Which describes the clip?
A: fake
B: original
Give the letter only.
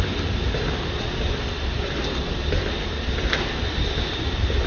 B